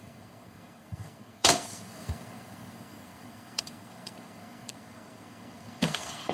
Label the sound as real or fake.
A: fake